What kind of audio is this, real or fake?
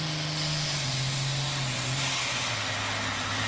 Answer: real